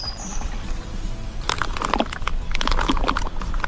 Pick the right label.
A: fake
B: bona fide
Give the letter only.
B